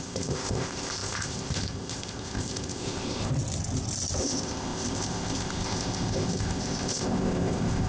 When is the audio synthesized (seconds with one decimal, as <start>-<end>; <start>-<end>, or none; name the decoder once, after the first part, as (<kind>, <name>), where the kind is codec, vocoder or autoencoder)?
0.0-3.3 (codec, ZipCodec); 4.2-7.9